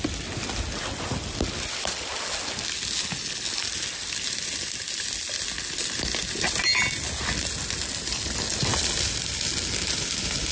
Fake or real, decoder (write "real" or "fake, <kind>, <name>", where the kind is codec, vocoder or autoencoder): real